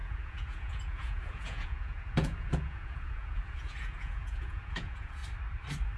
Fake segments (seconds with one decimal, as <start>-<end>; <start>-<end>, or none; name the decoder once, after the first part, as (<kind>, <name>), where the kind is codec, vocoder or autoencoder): 0.0-5.2 (vocoder, Vocos)